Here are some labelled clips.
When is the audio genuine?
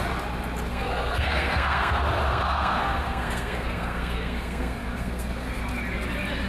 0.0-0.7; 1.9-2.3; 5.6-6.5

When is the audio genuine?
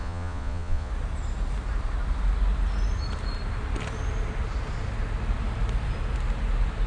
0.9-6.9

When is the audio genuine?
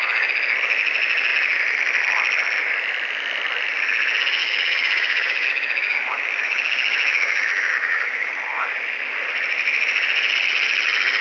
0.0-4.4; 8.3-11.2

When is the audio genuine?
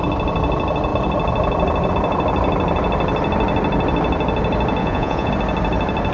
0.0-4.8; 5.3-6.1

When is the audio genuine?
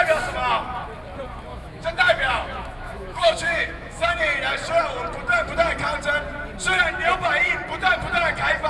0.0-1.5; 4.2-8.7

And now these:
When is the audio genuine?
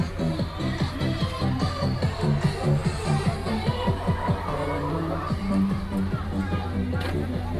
0.0-7.6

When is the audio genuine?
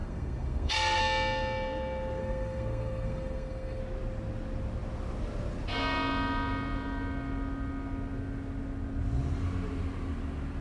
1.0-2.2; 3.8-10.6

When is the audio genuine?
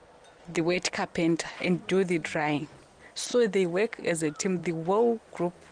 0.0-5.7